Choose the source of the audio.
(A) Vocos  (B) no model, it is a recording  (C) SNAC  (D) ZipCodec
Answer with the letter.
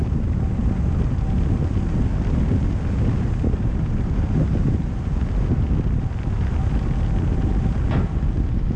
B